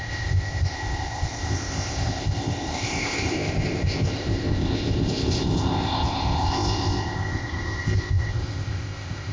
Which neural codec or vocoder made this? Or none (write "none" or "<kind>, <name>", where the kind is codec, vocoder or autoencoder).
codec, ZipCodec